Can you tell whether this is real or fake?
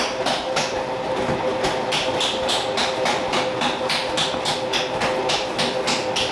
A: real